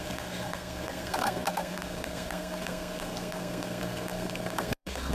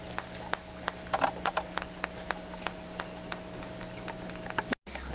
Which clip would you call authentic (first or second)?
second